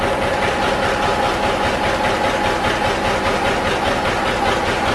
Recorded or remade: remade